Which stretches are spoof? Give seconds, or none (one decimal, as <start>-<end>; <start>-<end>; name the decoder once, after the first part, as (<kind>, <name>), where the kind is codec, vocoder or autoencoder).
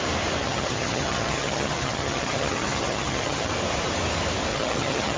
0.4-3.5 (vocoder, HiFi-GAN); 4.5-5.2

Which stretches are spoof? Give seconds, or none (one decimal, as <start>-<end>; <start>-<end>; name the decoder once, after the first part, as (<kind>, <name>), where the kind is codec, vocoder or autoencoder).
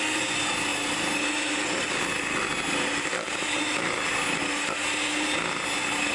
none